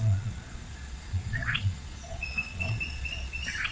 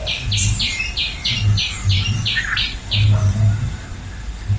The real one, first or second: second